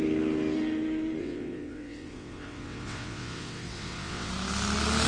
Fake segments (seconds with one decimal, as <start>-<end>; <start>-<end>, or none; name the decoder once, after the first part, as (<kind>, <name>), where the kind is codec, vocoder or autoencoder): 1.2-4.3 (vocoder, WaveNeXt)